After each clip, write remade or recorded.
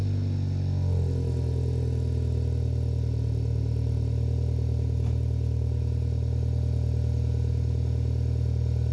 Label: recorded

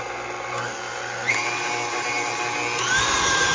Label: recorded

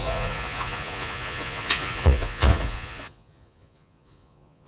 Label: remade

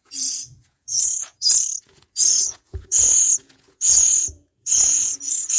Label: remade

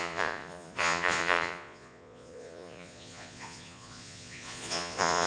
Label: remade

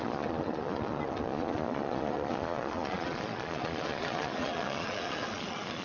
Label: remade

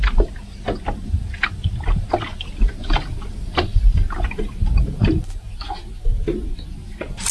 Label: recorded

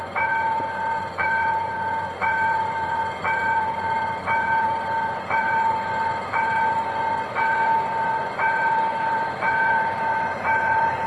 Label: remade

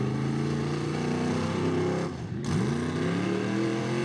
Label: recorded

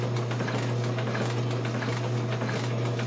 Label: recorded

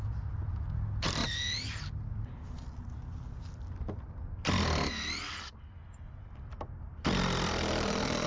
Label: recorded